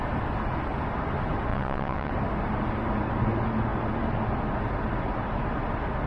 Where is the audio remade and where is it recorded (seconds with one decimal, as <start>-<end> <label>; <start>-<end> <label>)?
0.0-1.5 recorded; 1.5-2.1 remade; 2.1-6.1 recorded